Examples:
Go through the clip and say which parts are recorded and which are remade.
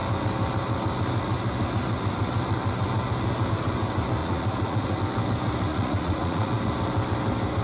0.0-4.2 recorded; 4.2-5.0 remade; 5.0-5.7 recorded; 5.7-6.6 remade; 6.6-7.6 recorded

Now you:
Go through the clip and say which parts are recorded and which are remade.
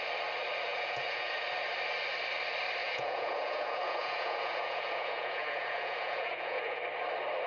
0.0-0.7 recorded; 0.7-1.3 remade; 1.3-2.8 recorded; 2.8-6.8 remade; 6.8-7.5 recorded